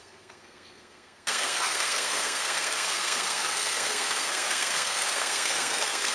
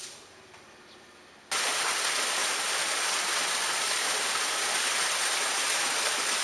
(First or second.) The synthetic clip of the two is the first